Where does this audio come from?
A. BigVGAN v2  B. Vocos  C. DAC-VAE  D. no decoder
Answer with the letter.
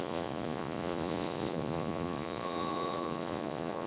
B